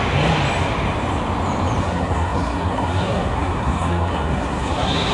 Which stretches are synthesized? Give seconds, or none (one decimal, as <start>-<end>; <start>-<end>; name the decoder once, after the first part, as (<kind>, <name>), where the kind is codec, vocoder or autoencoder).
1.8-5.1 (codec, SNAC)